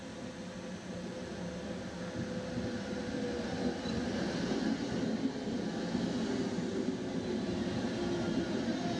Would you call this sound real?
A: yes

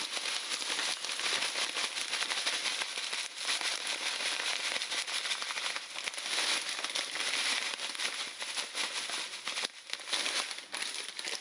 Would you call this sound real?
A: yes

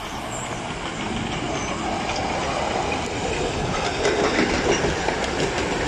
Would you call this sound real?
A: yes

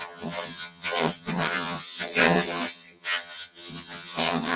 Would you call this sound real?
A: no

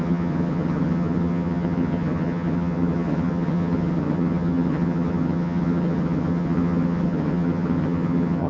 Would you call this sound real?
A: no